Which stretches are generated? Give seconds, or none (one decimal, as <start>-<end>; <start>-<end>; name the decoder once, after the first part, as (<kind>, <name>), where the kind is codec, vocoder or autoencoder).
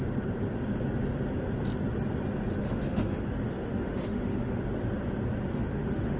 2.5-3.2 (autoencoder, DAC-VAE); 3.6-4.6; 5.5-6.2